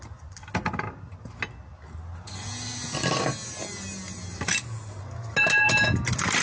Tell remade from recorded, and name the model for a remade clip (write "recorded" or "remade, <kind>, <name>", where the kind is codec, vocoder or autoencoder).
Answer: recorded